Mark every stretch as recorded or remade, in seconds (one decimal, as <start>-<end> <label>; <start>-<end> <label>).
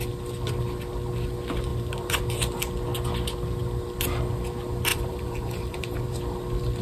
0.0-1.7 recorded; 1.7-2.2 remade; 2.2-4.9 recorded; 4.9-6.2 remade; 6.2-6.8 recorded